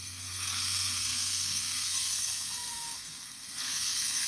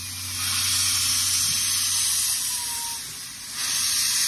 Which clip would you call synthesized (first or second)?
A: first